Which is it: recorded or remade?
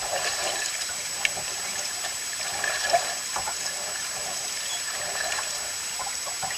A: remade